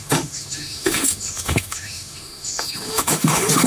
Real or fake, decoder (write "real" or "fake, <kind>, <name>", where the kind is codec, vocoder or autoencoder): fake, autoencoder, DAC-VAE